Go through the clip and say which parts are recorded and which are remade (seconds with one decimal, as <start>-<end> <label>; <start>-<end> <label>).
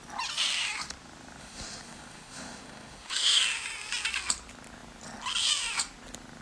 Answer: 0.0-1.4 recorded; 1.4-3.4 remade; 3.4-6.4 recorded